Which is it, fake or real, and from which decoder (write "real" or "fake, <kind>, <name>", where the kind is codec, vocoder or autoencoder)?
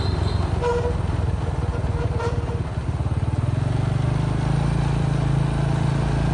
real